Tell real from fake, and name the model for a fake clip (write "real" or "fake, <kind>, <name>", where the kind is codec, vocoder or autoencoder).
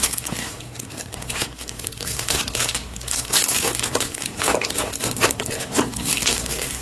fake, codec, SNAC